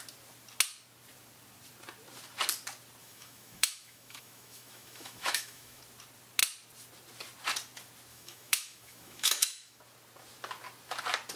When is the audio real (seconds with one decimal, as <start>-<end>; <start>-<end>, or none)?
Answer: 0.0-3.0; 5.8-8.1; 9.8-11.4